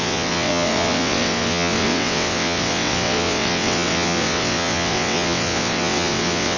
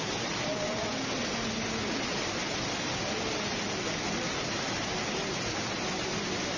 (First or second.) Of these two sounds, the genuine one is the second